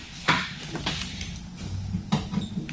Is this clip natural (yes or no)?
yes